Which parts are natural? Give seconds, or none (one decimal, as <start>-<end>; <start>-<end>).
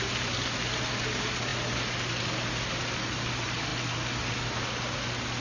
0.0-5.4